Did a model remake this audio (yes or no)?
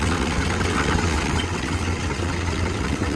yes